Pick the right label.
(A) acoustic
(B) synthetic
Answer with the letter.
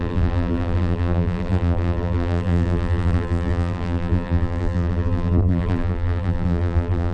B